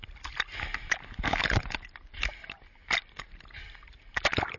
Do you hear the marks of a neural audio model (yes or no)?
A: no